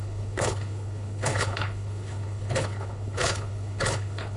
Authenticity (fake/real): fake